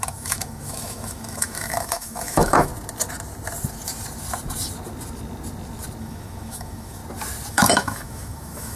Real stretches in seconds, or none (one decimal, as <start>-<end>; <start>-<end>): 2.7-6.0; 7.0-7.5